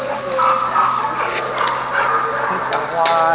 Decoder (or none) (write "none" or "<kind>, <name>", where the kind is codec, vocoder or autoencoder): none